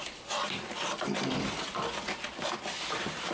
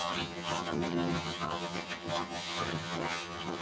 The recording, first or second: first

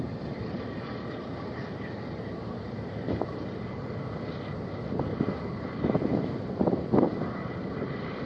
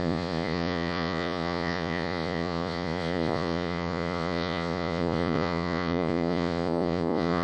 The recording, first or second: first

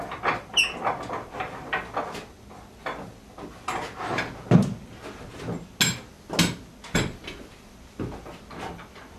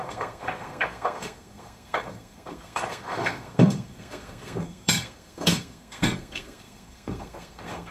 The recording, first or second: first